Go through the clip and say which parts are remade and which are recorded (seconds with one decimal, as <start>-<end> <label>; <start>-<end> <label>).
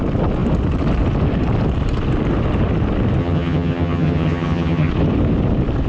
0.0-3.2 recorded; 3.2-4.9 remade; 4.9-5.9 recorded